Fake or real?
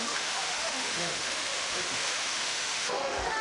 fake